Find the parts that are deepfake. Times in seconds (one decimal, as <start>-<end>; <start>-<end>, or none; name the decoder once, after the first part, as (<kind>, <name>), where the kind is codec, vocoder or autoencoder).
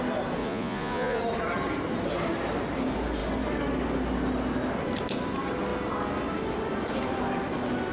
0.4-1.2 (vocoder, Vocos)